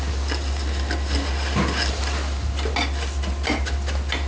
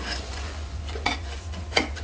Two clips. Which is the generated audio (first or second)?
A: second